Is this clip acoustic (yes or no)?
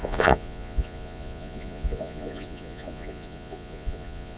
no